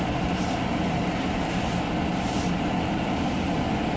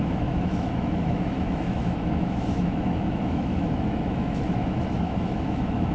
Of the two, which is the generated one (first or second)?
second